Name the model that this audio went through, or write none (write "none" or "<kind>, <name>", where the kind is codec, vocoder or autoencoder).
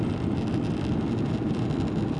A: vocoder, BigVGAN v2